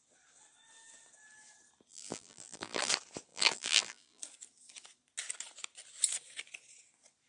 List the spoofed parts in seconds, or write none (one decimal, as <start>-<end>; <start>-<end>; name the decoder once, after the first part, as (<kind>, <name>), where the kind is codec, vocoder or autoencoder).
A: 1.9-2.9 (vocoder, BigVGAN v2); 3.3-4.2